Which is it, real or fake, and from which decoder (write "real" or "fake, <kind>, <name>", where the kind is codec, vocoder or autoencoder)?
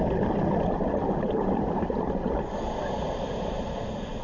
real